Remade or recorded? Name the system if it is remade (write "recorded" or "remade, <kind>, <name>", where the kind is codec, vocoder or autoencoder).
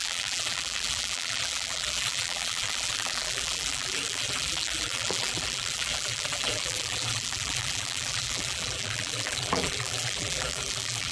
remade, vocoder, BigVGAN v2